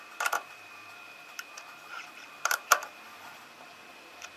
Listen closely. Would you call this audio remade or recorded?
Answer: remade